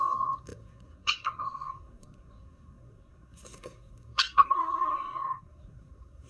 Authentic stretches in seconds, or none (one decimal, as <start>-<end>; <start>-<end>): none